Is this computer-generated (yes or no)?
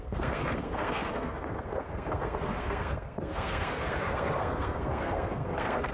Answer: yes